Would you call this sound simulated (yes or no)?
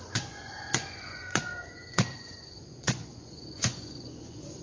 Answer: yes